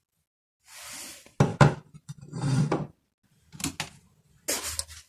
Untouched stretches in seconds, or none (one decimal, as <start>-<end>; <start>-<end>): 0.0-1.5; 3.2-5.1